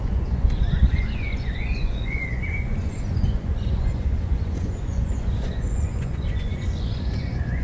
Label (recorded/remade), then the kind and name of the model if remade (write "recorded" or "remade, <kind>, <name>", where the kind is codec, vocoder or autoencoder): remade, vocoder, Vocos